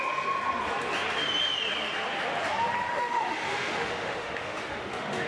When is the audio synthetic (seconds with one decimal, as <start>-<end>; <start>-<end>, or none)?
2.9-5.3